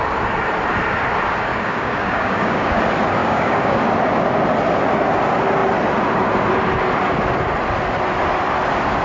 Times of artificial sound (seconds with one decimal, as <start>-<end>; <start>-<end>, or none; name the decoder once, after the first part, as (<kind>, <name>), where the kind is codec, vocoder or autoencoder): 1.5-2.8 (codec, DAC); 3.2-3.8